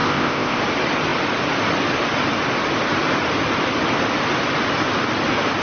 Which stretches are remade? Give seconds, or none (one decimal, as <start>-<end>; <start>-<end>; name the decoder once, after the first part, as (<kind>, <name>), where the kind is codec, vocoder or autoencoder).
0.0-0.6 (codec, ZipCodec)